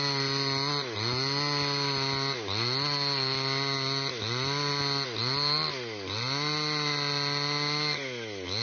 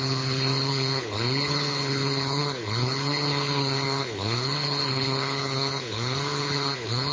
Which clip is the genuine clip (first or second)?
first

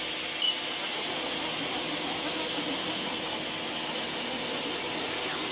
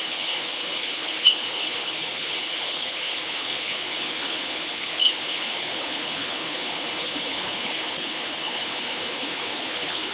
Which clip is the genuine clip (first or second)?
first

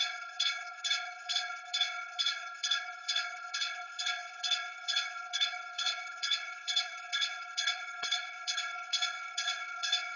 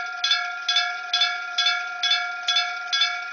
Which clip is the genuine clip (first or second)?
second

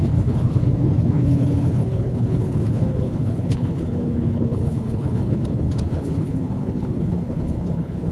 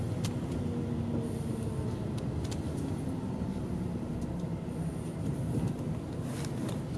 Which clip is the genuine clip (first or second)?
second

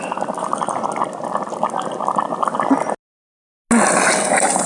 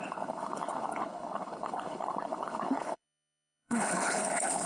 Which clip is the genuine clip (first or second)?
first